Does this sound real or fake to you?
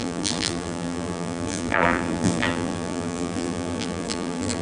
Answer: fake